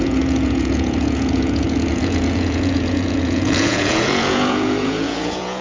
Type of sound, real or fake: fake